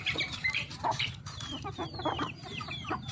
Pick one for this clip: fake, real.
fake